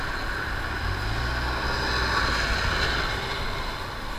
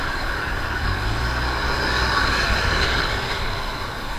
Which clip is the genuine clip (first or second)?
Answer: first